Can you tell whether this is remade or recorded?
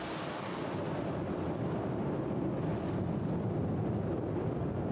recorded